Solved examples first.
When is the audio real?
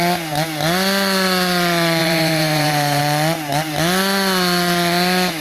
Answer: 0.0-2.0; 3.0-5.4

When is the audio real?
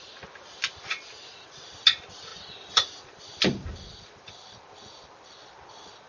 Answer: none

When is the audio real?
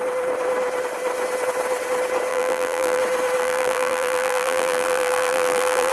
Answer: 0.0-2.3; 3.0-3.4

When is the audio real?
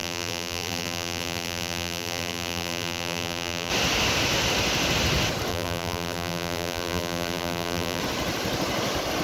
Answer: 3.7-5.5; 8.0-9.2